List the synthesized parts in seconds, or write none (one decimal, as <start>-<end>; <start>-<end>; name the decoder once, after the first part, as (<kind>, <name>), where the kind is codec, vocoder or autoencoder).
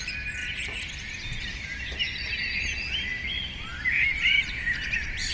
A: 0.4-2.3 (vocoder, BigVGAN v2); 3.7-5.3